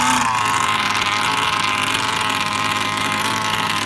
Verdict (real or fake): real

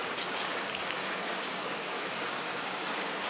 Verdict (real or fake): fake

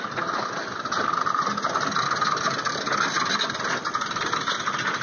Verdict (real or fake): real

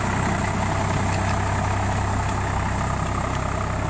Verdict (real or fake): real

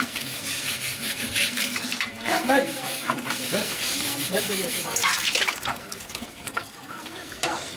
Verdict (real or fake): fake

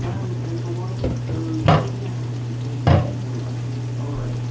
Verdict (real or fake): real